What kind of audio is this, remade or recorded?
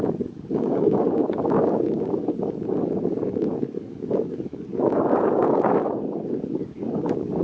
remade